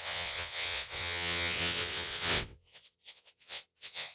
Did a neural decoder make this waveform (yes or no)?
yes